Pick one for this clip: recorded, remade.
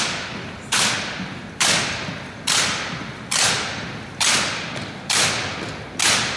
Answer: remade